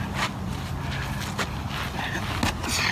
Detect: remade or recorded recorded